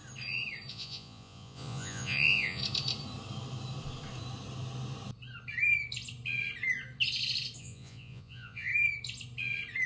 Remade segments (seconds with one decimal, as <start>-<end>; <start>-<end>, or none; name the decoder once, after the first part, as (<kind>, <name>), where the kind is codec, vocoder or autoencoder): 0.7-2.6 (vocoder, Vocos); 7.6-8.7